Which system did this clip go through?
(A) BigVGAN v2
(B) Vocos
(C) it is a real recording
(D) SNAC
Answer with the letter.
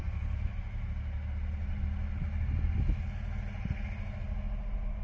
C